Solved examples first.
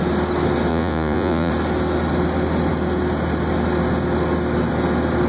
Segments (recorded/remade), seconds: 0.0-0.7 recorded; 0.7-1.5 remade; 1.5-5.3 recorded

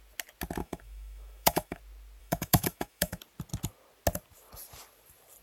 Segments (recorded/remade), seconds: 0.0-0.6 recorded; 0.6-1.8 remade; 1.8-2.2 recorded; 2.2-3.2 remade; 3.2-5.4 recorded

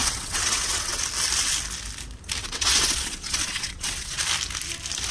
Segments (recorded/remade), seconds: 0.0-1.0 remade; 1.0-2.4 recorded; 2.4-4.2 remade; 4.2-5.1 recorded

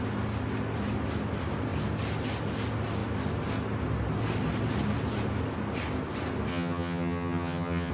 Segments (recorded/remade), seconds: 0.0-6.5 recorded; 6.5-7.9 remade

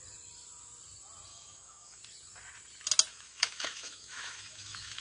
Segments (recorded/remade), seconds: 0.0-1.3 recorded; 1.3-2.0 remade; 2.0-3.1 recorded; 3.1-5.0 remade

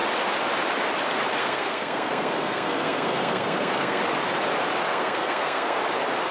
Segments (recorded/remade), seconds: 0.0-1.4 recorded; 1.4-4.0 remade; 4.0-4.9 recorded; 4.9-5.8 remade; 5.8-6.3 recorded